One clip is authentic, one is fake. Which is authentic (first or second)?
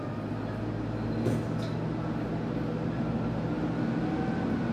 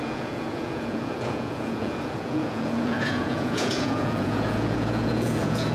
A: first